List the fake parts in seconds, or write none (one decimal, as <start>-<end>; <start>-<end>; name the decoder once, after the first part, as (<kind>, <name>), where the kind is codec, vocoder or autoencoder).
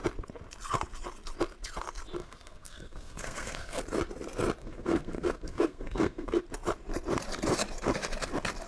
2.2-3.8 (codec, SNAC); 4.6-6.4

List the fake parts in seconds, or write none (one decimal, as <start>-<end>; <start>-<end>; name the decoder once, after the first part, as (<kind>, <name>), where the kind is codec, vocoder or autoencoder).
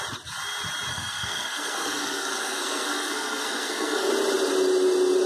0.9-4.1 (codec, SNAC)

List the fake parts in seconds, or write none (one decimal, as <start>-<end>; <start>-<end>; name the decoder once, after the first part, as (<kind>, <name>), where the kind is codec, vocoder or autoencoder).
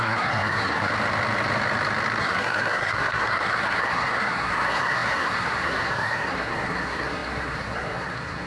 0.0-0.9 (codec, SNAC); 2.2-8.5